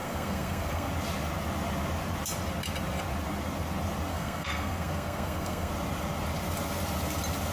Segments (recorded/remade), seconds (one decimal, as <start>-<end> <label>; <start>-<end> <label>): 0.0-0.9 remade; 0.9-4.1 recorded; 4.1-5.7 remade; 5.7-7.5 recorded